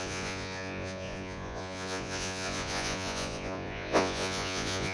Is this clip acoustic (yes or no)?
no